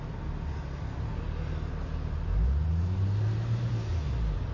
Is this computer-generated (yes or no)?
no